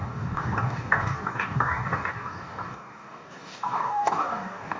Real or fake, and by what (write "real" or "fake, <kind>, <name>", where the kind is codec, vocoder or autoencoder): fake, codec, DAC